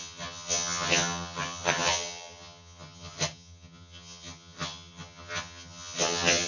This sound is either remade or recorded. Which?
remade